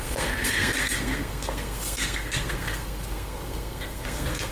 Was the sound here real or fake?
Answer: fake